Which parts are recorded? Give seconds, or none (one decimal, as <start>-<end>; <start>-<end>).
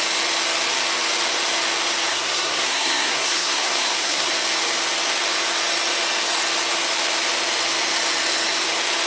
0.0-2.1; 4.3-9.1